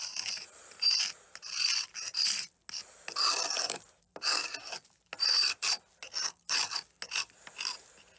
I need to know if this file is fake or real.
real